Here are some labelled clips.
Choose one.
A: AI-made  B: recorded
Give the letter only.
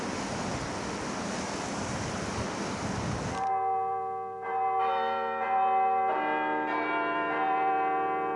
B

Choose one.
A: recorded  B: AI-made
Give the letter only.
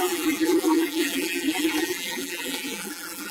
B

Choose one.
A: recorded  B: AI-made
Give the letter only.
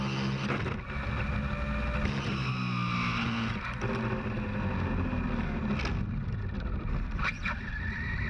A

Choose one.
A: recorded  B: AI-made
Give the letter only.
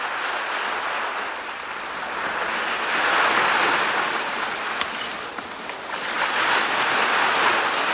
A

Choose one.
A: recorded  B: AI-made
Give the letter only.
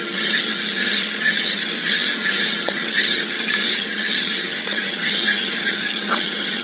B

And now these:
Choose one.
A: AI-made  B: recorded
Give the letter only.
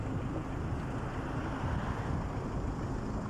B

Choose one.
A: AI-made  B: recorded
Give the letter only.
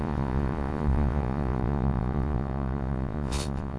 A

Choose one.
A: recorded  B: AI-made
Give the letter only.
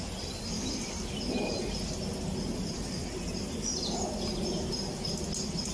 A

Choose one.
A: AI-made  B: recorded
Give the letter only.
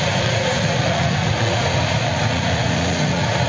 A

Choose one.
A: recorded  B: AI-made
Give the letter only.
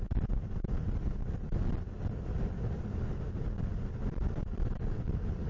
A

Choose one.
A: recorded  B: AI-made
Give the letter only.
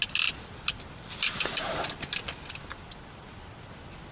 A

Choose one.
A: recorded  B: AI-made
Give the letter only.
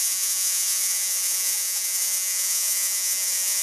B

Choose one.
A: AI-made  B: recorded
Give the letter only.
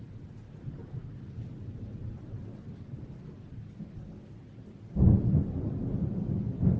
B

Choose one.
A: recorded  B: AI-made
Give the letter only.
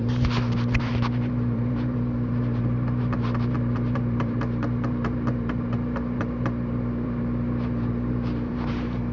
B